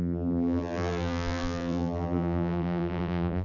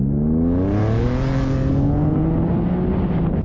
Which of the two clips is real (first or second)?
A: second